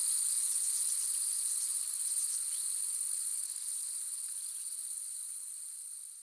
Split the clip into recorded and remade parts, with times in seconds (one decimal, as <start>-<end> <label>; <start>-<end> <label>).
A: 0.0-6.2 recorded

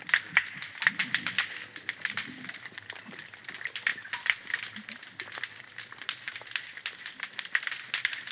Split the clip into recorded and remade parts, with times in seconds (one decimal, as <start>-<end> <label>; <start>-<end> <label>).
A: 0.0-8.3 recorded

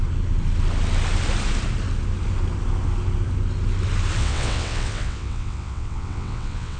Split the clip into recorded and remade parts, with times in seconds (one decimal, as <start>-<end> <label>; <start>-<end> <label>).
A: 0.0-4.2 recorded; 4.2-6.8 remade

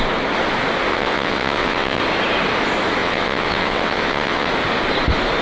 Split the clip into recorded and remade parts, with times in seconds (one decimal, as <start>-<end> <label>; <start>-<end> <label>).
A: 0.0-0.9 recorded; 0.9-2.0 remade; 2.0-3.0 recorded; 3.0-4.5 remade; 4.5-5.4 recorded

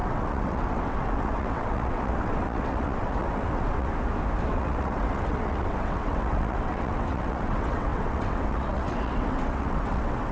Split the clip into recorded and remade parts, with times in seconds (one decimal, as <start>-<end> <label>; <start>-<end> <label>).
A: 0.0-3.9 remade; 3.9-4.5 recorded; 4.5-10.3 remade

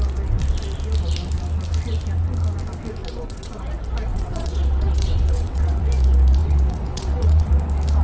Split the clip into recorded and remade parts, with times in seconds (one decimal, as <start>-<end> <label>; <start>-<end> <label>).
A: 0.0-3.0 recorded; 3.0-3.6 remade; 3.6-4.1 recorded; 4.1-5.9 remade; 5.9-6.4 recorded; 6.4-7.5 remade; 7.5-8.0 recorded

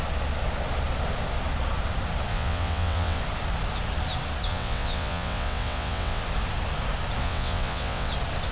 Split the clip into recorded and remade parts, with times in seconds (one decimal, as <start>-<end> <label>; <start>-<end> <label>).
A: 0.0-2.3 recorded; 2.3-3.2 remade; 3.2-4.5 recorded; 4.5-6.2 remade; 6.2-7.2 recorded; 7.2-8.1 remade; 8.1-8.5 recorded

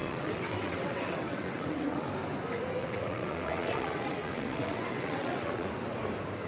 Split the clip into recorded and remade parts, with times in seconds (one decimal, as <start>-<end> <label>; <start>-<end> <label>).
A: 0.0-2.1 remade; 2.1-2.8 recorded; 2.8-5.7 remade; 5.7-6.5 recorded